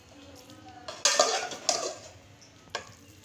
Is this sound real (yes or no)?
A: yes